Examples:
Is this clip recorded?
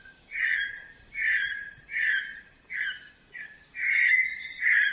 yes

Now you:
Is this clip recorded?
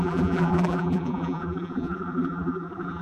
no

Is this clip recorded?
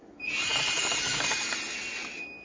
yes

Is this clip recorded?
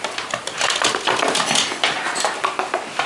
no